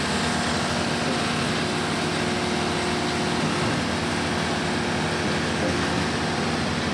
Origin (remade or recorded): recorded